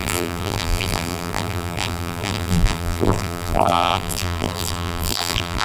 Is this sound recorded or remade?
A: remade